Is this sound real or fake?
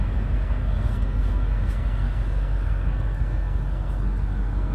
fake